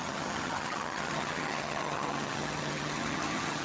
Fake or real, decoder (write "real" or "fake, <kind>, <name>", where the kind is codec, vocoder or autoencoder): fake, vocoder, HiFi-GAN